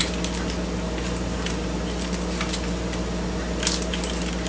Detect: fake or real real